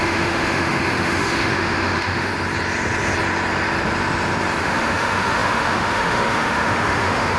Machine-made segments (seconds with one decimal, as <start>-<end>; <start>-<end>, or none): 0.0-2.3; 4.6-7.4